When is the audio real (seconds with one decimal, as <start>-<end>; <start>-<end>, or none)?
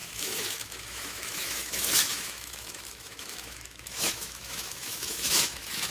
none